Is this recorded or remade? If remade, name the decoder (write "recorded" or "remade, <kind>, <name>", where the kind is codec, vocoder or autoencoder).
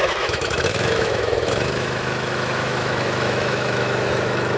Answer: remade, autoencoder, DAC-VAE